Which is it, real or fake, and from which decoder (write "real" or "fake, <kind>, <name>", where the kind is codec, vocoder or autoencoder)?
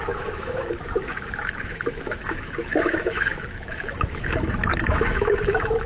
fake, autoencoder, DAC-VAE